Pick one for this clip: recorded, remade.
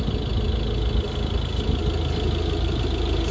recorded